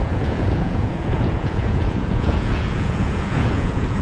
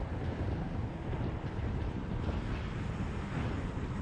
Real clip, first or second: second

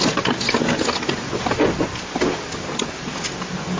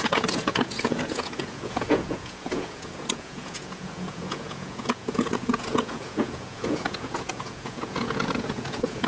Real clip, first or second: first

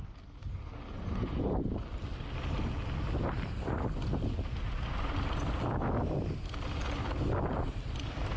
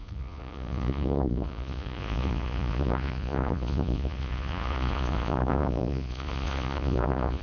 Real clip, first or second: first